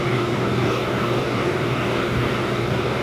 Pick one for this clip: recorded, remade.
remade